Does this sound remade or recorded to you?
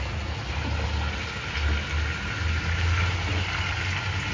recorded